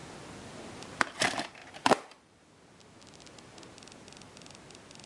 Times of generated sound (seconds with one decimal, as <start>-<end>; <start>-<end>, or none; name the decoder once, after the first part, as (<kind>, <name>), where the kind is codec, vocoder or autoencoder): 1.6-2.4 (vocoder, BigVGAN v2)